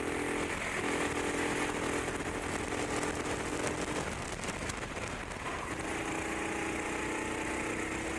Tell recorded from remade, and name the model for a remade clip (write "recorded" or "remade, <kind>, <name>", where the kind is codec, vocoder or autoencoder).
recorded